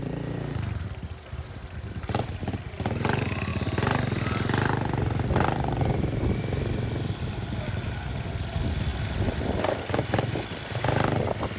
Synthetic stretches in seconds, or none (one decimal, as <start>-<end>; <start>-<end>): none